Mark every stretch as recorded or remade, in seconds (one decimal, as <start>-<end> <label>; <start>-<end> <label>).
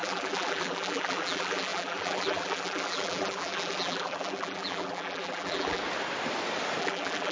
0.0-5.8 remade; 5.8-6.8 recorded; 6.8-7.3 remade